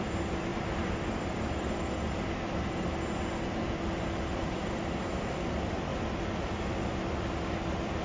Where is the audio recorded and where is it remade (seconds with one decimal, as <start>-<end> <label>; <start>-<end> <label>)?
0.0-0.5 recorded; 0.5-3.0 remade; 3.0-4.3 recorded; 4.3-4.8 remade; 4.8-8.0 recorded

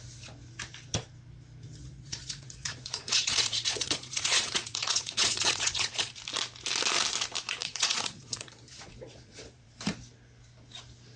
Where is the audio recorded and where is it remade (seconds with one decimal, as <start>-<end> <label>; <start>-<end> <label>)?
0.0-1.8 recorded; 1.8-6.2 remade; 6.2-7.6 recorded; 7.6-9.7 remade; 9.7-11.2 recorded

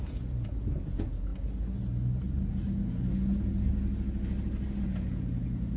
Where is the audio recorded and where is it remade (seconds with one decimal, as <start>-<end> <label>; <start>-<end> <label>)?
0.0-1.3 remade; 1.3-4.8 recorded; 4.8-5.8 remade

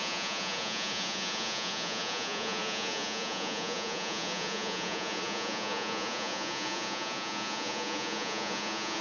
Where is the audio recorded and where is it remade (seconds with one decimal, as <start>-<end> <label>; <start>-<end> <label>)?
0.0-9.0 remade

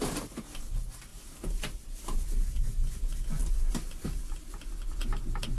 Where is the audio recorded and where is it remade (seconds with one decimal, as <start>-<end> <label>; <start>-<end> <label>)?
0.0-1.1 recorded; 1.1-3.0 remade; 3.0-3.4 recorded; 3.4-4.0 remade; 4.0-5.0 recorded; 5.0-5.6 remade

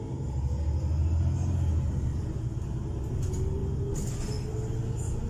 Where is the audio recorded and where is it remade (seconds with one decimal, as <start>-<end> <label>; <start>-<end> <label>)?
0.0-5.3 recorded

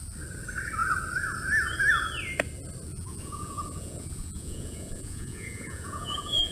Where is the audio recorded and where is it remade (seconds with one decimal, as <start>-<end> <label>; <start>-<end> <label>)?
0.0-2.9 recorded; 2.9-6.5 remade